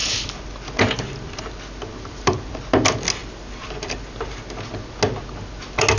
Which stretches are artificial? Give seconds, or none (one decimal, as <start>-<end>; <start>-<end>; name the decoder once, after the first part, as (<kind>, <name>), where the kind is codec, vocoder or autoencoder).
0.0-1.4 (vocoder, BigVGAN v2); 1.9-2.7